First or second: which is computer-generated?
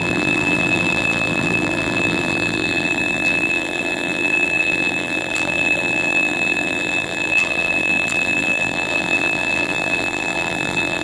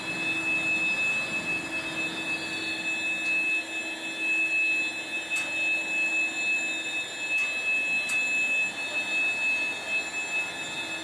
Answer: first